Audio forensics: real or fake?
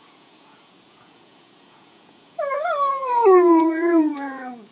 fake